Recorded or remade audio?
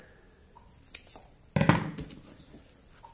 recorded